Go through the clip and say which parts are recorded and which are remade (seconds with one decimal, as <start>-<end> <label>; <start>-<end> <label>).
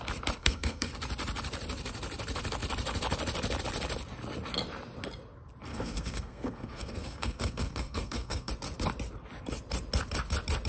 0.0-0.4 recorded; 0.4-0.9 remade; 0.9-5.7 recorded; 5.7-8.5 remade; 8.5-10.7 recorded